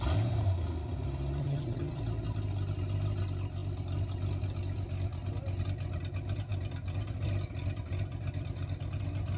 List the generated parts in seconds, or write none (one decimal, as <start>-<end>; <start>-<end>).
1.4-2.0